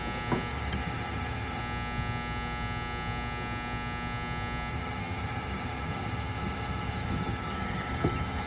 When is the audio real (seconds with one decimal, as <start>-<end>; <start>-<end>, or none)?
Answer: 0.0-0.5; 1.6-4.7

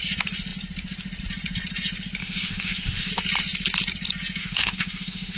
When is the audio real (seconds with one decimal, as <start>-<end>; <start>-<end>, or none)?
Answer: 0.0-2.2; 3.1-4.4

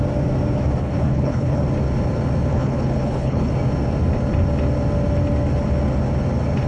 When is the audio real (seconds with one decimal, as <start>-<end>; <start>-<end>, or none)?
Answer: 0.0-0.8; 1.6-2.5; 3.5-6.7